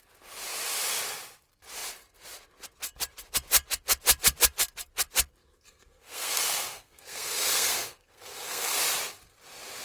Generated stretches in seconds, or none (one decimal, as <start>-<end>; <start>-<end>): 5.4-8.8